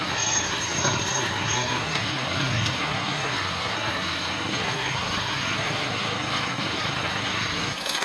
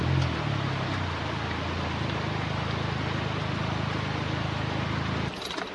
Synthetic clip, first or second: first